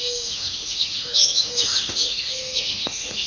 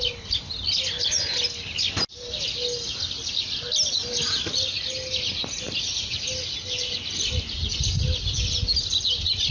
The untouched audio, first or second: second